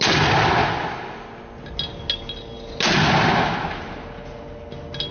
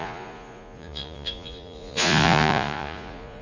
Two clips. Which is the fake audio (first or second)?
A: second